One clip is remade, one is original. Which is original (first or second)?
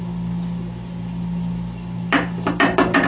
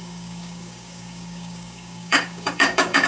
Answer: first